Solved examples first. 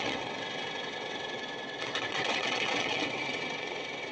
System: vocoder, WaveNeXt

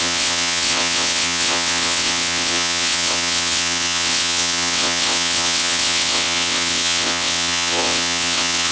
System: vocoder, WaveNeXt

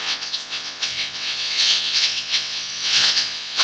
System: vocoder, WaveNeXt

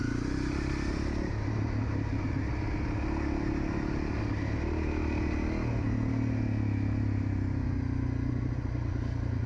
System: none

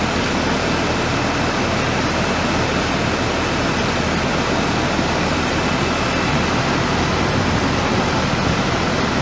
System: none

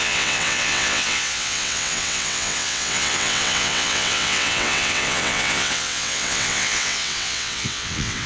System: vocoder, WaveNeXt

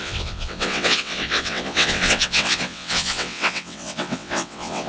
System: vocoder, WaveNeXt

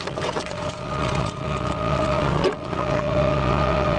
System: vocoder, WaveNeXt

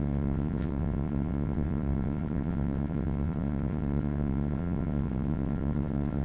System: vocoder, WaveNeXt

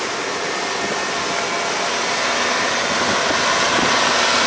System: none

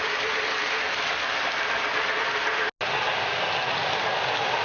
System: none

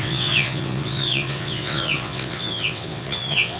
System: vocoder, WaveNeXt